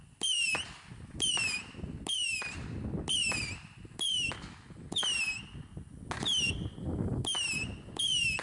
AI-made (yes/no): no